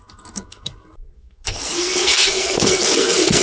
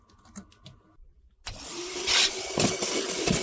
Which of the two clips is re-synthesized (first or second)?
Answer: first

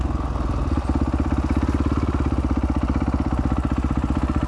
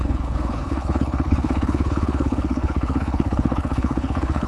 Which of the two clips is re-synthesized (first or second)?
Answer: second